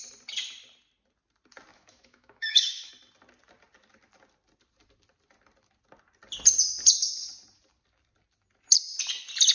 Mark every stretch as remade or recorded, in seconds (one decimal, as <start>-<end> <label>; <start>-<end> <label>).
0.0-1.7 recorded; 1.7-2.9 remade; 2.9-9.5 recorded